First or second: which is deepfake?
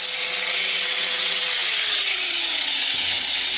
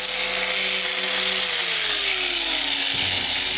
first